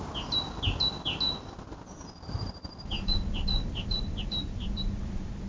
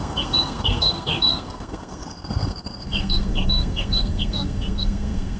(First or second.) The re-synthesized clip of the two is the second